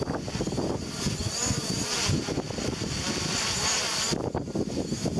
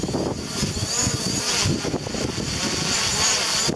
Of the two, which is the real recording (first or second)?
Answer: second